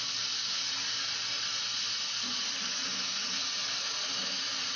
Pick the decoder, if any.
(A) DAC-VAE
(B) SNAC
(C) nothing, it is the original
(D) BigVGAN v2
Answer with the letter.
C